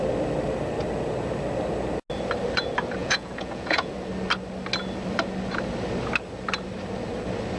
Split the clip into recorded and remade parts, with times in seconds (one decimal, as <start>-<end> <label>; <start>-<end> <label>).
0.0-3.0 recorded; 3.0-3.9 remade; 3.9-7.6 recorded